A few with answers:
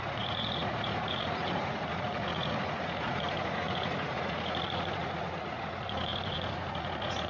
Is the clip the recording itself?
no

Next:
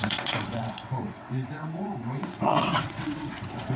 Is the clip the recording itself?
no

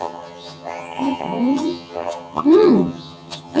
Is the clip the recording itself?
no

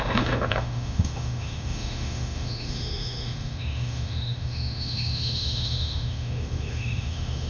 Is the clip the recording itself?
no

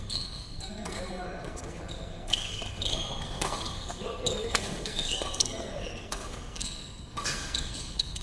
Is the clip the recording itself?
no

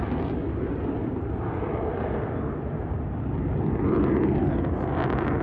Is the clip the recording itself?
yes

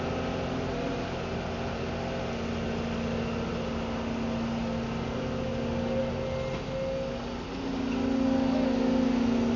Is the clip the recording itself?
yes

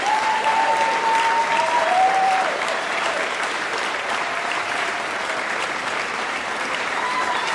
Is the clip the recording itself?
no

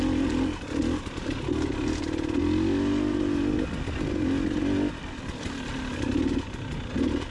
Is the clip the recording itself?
yes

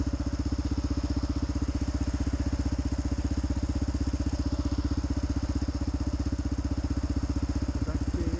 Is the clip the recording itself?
yes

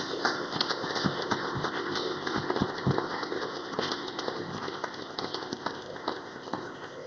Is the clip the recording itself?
no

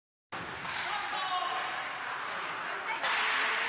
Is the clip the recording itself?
yes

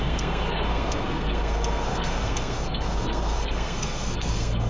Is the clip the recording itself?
no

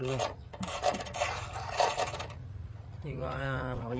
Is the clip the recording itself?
no